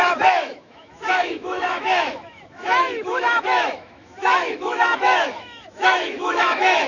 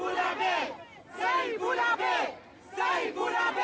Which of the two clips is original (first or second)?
second